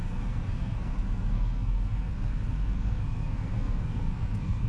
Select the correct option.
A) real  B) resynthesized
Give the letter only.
B